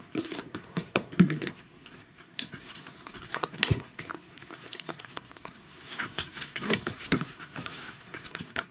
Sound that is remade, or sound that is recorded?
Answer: remade